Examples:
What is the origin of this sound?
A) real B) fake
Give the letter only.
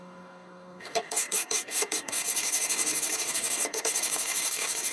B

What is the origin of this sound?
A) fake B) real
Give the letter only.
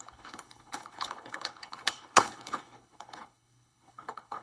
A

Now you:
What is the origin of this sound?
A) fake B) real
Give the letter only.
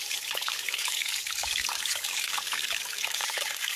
A